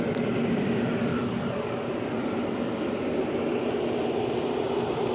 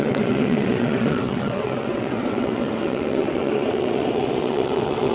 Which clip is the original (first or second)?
first